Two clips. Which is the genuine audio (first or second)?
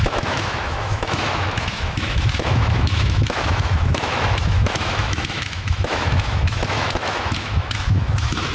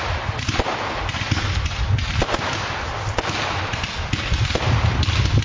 second